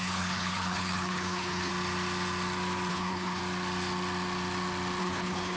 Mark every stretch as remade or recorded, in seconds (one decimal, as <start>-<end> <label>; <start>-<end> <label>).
0.0-1.7 remade; 1.7-2.9 recorded; 2.9-3.4 remade; 3.4-5.0 recorded; 5.0-5.6 remade